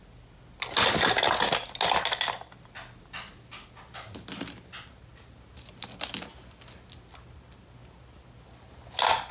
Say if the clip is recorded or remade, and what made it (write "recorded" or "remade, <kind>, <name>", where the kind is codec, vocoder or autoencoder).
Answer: recorded